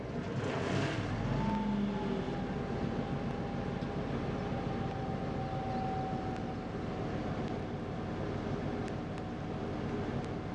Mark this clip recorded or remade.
recorded